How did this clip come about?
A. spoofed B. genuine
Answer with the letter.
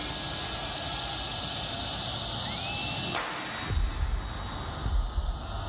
B